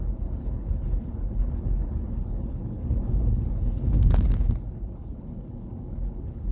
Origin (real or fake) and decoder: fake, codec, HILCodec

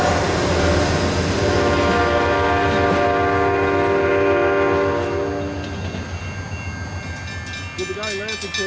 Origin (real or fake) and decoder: real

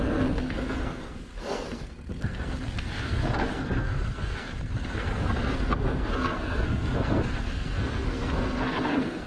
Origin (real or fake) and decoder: fake, codec, SNAC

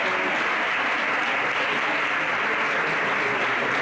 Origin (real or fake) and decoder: real